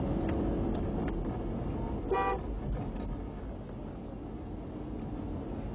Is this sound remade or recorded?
recorded